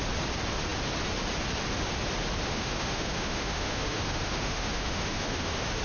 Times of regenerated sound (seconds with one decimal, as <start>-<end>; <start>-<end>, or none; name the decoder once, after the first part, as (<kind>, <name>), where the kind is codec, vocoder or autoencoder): 2.5-5.8 (autoencoder, DAC-VAE)